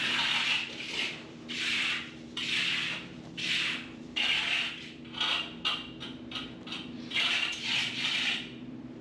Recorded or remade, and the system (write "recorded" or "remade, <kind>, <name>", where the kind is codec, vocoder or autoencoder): remade, vocoder, BigVGAN v2